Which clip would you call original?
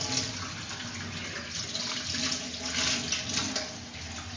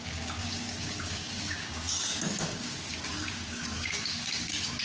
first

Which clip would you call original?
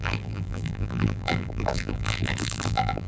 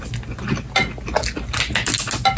second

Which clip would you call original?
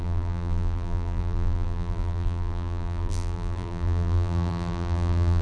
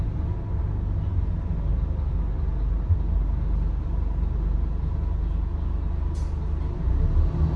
second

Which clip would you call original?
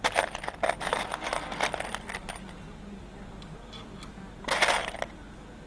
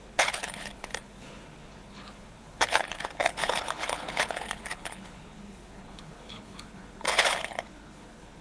first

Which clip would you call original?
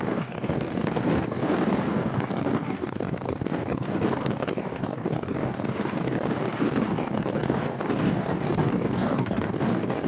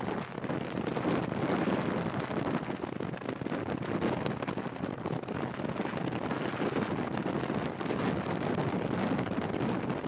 second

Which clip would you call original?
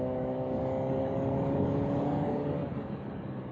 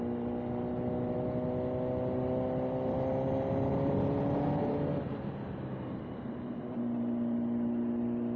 second